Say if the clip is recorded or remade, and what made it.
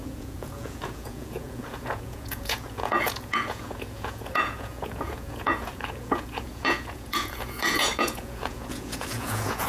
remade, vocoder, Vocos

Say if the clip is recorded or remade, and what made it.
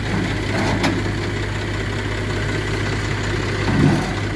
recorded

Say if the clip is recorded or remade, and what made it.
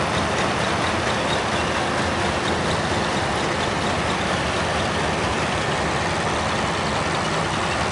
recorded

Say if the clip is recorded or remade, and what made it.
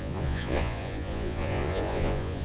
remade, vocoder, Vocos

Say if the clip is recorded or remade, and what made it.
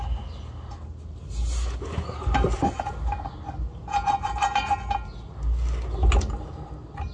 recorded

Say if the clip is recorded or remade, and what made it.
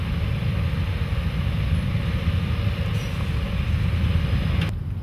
recorded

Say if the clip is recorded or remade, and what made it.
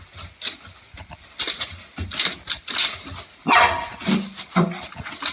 recorded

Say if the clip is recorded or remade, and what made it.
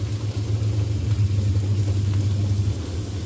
recorded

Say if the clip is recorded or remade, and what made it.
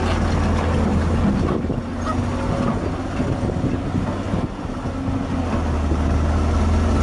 recorded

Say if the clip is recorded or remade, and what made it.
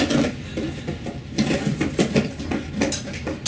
recorded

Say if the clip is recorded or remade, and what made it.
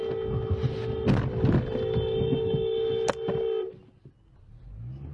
recorded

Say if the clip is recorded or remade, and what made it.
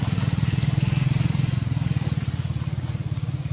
remade, vocoder, Vocos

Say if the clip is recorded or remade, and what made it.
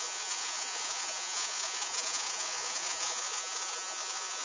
remade, vocoder, Vocos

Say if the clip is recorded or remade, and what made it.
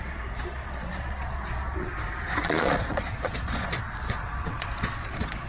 remade, vocoder, Vocos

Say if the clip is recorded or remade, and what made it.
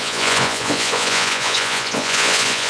remade, vocoder, Vocos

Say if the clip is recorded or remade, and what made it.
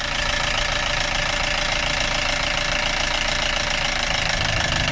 recorded